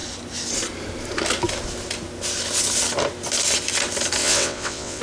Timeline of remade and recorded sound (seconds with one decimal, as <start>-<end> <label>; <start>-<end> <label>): 0.0-4.2 recorded; 4.2-5.0 remade